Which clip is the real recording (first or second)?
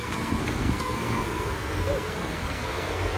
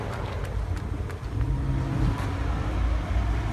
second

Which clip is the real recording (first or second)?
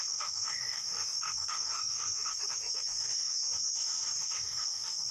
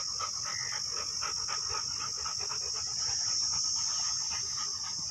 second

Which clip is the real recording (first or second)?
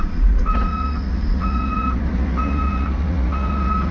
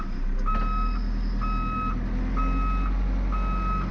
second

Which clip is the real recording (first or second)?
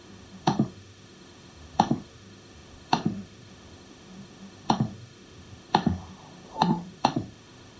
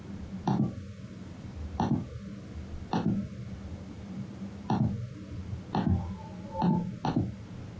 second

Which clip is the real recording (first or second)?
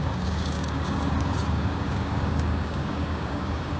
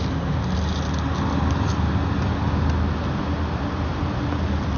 second